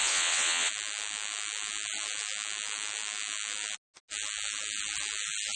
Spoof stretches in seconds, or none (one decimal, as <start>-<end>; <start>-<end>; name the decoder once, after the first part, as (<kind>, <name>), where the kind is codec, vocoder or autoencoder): 0.0-0.7 (vocoder, WaveNeXt)